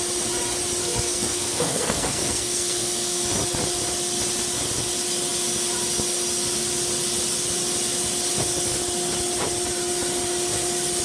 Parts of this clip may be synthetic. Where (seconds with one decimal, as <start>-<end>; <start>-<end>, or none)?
0.8-3.2

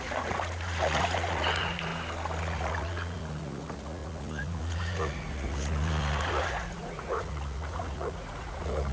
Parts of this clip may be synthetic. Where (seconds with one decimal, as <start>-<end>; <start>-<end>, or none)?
0.0-1.9; 2.4-8.9

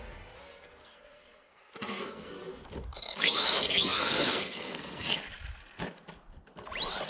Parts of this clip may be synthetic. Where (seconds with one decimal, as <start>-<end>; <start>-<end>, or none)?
0.4-2.5; 2.9-5.2